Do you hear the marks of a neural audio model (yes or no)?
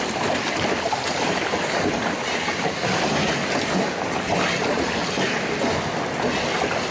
no